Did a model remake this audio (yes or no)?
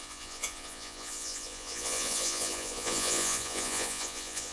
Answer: yes